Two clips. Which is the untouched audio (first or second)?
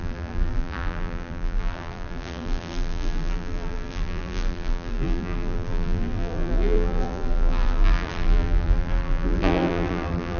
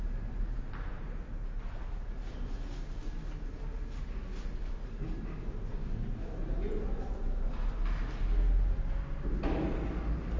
second